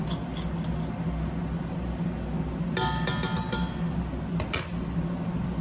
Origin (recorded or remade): recorded